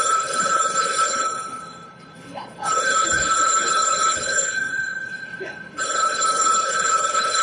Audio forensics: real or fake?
fake